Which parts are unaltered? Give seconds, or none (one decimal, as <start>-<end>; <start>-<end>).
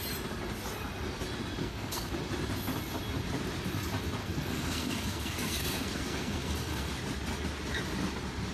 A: 0.0-1.6; 2.1-4.2; 6.9-8.5